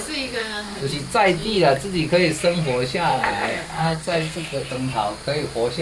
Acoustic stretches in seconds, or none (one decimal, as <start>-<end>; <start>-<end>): 0.0-0.4; 0.9-3.1; 4.7-5.8